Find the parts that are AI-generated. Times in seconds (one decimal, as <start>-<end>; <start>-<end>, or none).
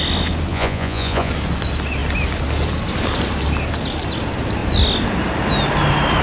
0.5-1.3